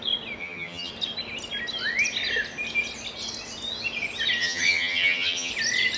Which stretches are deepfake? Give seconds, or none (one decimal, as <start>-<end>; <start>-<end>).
0.4-0.9; 4.4-5.5

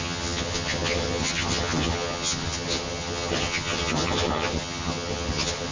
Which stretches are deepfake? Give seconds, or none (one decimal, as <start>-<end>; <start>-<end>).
0.0-5.7

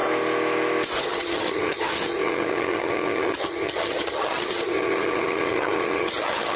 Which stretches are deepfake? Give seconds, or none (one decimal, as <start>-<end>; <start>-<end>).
1.0-6.6

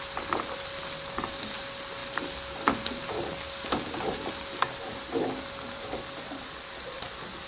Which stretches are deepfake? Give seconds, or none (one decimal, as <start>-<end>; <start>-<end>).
none

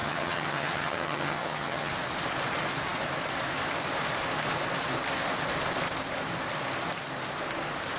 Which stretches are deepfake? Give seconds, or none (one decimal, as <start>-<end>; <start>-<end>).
0.0-1.9

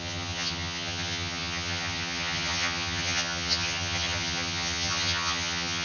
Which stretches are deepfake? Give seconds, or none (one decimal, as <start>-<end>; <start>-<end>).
0.0-5.8

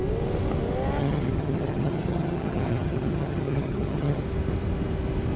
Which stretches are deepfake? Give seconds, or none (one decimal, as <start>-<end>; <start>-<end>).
1.0-4.2

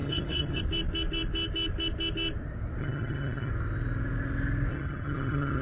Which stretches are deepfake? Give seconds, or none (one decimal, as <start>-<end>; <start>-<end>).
0.0-0.6; 2.8-3.5; 4.7-5.6